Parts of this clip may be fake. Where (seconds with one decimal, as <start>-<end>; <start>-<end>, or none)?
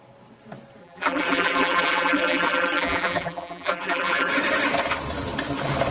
0.8-4.3